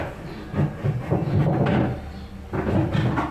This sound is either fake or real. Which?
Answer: real